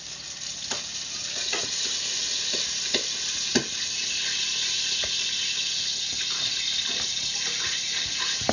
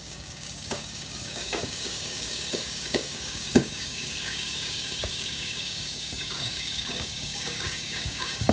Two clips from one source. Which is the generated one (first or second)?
second